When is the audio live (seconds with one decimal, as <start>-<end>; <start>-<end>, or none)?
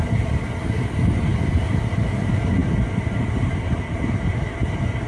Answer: 0.0-5.1